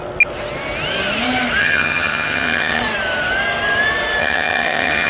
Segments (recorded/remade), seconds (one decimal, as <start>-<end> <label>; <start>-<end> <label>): 0.0-1.6 recorded; 1.6-2.8 remade; 2.8-4.2 recorded; 4.2-5.1 remade